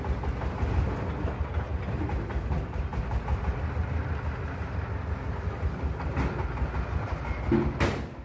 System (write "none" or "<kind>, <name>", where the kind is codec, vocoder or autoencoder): none